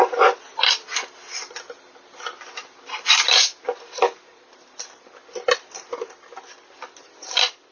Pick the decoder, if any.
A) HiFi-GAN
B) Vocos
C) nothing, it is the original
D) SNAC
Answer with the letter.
C